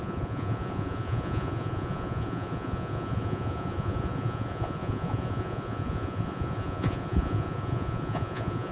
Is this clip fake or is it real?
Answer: fake